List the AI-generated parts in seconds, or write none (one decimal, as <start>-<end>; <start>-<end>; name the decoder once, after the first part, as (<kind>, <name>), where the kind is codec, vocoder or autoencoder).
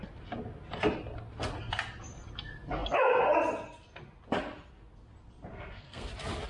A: 5.5-6.1 (codec, SNAC)